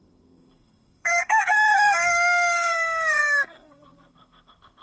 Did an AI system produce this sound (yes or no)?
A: yes